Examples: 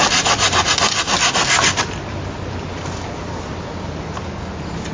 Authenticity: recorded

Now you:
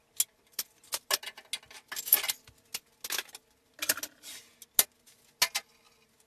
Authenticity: recorded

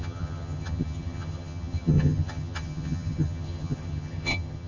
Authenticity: remade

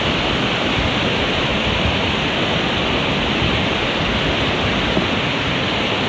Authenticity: recorded